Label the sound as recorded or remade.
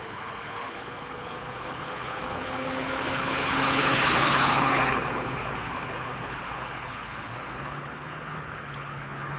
remade